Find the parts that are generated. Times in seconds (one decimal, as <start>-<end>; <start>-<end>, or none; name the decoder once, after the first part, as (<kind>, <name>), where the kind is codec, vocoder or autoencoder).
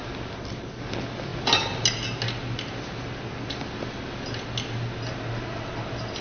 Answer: none